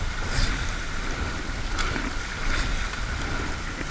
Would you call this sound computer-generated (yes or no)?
no